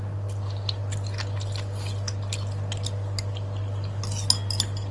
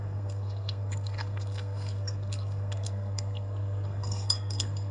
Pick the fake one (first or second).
second